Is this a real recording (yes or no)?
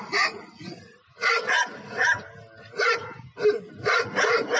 yes